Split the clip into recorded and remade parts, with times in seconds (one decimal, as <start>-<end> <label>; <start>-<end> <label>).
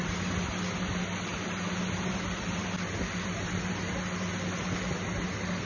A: 0.0-5.7 recorded